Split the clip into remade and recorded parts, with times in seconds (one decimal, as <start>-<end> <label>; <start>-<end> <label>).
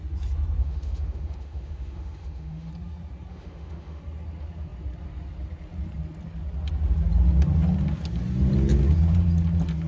0.0-0.6 recorded; 0.6-2.7 remade; 2.7-3.3 recorded; 3.3-4.0 remade; 4.0-9.9 recorded